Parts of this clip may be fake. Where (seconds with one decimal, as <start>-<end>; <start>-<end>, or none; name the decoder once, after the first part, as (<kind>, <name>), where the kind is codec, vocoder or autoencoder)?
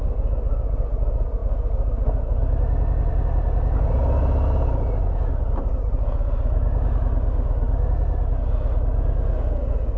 none